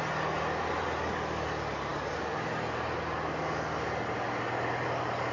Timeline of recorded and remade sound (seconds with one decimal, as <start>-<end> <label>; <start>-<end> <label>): 0.0-5.3 recorded